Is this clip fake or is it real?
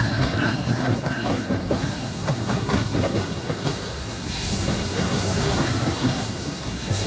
fake